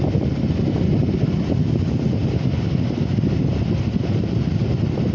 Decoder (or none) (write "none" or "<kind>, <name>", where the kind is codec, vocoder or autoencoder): none